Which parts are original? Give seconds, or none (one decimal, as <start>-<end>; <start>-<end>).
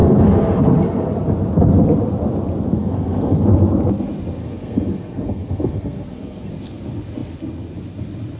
0.6-2.8; 3.4-4.4; 6.5-8.4